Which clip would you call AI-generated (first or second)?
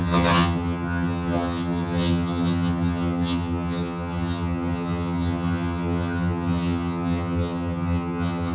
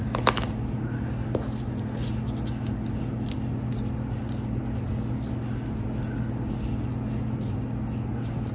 first